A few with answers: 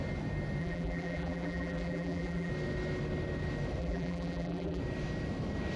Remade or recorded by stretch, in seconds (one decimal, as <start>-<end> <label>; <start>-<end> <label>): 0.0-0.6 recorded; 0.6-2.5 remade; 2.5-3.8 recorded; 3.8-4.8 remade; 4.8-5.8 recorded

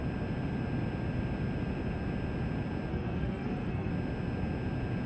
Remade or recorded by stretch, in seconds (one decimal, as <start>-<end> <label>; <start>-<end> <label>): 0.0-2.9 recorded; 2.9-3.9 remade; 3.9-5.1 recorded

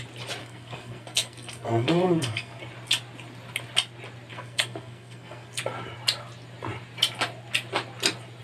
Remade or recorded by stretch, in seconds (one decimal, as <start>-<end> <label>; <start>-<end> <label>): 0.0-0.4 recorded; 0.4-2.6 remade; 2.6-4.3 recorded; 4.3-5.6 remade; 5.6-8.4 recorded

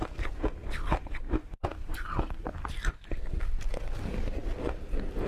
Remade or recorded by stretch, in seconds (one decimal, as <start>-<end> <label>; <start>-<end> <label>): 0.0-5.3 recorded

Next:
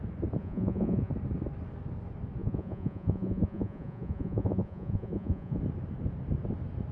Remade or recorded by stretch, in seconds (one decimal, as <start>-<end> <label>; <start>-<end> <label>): 0.0-0.4 recorded; 0.4-1.1 remade; 1.1-2.4 recorded; 2.4-5.6 remade; 5.6-6.9 recorded